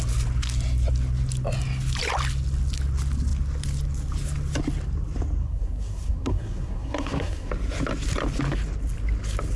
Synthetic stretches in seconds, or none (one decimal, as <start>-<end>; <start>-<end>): 5.4-7.5